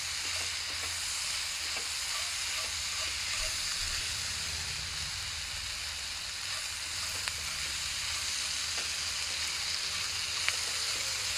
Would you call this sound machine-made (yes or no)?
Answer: no